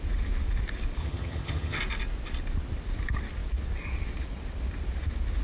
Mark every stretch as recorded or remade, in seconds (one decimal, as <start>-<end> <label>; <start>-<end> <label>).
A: 0.0-1.0 recorded; 1.0-1.8 remade; 1.8-5.4 recorded